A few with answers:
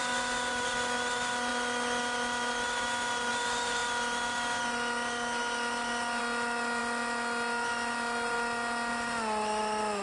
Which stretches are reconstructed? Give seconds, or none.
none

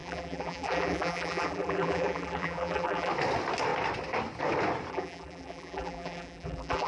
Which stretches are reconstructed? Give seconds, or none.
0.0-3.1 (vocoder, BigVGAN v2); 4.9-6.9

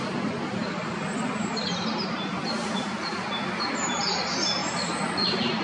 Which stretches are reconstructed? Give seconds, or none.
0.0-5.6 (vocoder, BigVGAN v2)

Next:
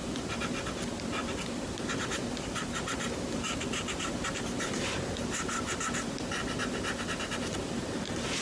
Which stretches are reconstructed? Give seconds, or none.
1.2-5.7 (vocoder, BigVGAN v2)

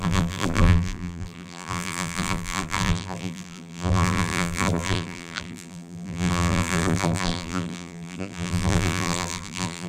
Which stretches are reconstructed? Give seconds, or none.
0.0-9.9 (vocoder, BigVGAN v2)

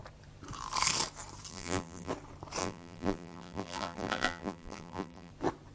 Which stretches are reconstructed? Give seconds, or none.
1.5-2.1 (vocoder, BigVGAN v2); 2.6-5.3